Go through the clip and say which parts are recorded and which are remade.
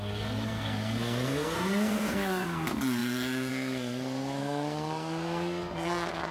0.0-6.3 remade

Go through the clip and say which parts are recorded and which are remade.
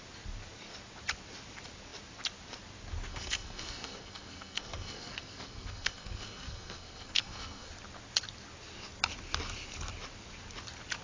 0.0-3.1 recorded; 3.1-7.7 remade; 7.7-11.0 recorded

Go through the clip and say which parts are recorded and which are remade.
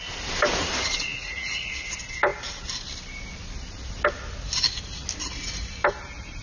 0.0-1.1 recorded; 1.1-1.7 remade; 1.7-6.4 recorded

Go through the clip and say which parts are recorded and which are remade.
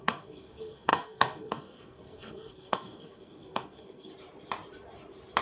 0.0-4.1 remade; 4.1-5.4 recorded